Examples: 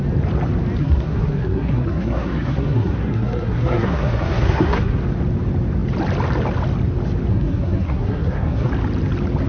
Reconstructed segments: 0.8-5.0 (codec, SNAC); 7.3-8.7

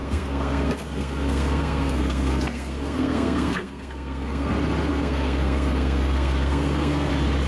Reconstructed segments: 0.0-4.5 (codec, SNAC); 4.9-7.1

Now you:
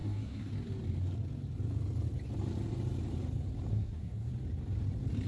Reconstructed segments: 0.0-0.5 (codec, SNAC); 3.7-4.3

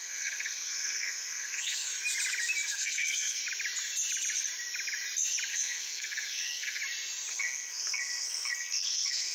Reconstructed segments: 0.0-1.9 (codec, SNAC); 2.7-3.4; 5.5-6.8; 7.3-9.3

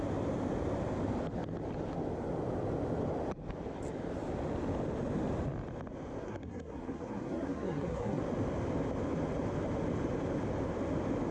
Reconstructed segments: 6.2-8.2 (codec, SNAC)

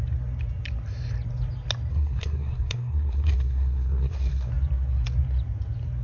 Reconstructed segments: 1.9-4.5 (codec, SNAC)

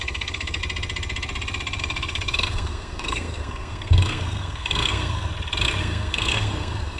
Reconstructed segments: 0.0-0.6 (codec, SNAC); 1.8-5.3; 5.8-7.0

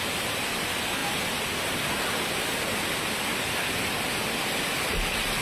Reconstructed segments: none